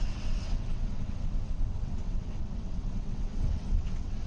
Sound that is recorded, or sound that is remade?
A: remade